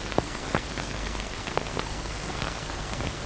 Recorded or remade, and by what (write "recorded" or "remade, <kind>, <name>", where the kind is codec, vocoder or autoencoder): remade, codec, SNAC